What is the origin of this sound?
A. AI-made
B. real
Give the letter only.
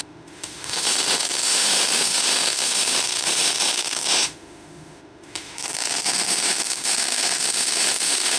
A